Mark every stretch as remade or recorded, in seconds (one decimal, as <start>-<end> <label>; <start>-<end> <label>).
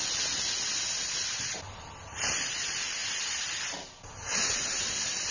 0.0-5.3 recorded